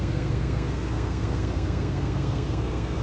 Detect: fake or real fake